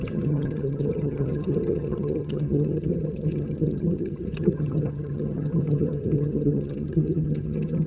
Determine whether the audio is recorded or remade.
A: remade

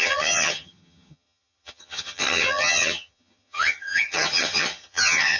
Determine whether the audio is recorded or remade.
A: remade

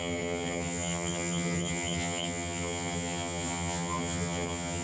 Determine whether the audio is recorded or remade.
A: remade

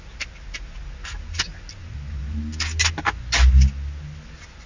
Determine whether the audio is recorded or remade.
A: recorded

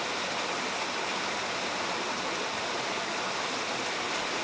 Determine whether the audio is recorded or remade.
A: recorded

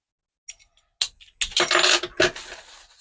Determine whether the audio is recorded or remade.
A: recorded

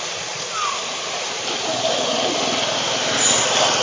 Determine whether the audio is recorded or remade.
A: recorded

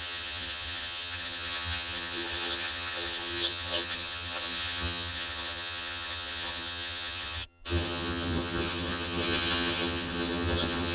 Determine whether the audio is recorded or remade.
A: remade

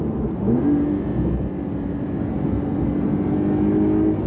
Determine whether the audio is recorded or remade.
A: recorded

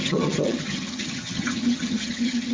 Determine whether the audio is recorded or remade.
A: remade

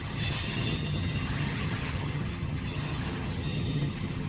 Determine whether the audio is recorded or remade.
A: remade